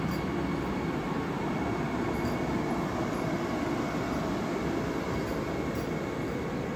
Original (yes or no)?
yes